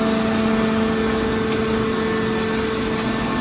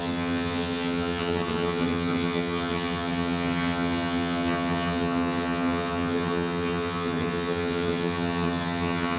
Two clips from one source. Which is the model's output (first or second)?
second